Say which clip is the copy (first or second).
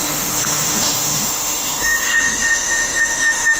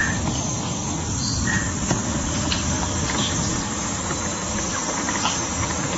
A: first